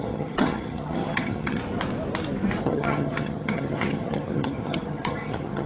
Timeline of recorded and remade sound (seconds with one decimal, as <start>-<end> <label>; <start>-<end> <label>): 0.0-1.6 remade; 1.6-2.6 recorded; 2.6-5.7 remade